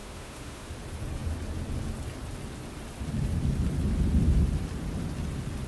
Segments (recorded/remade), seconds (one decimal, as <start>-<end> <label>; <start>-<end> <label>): 0.0-0.7 remade; 0.7-5.7 recorded